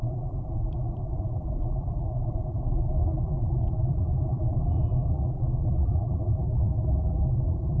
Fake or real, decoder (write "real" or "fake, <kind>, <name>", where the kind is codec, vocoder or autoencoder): fake, vocoder, BigVGAN v2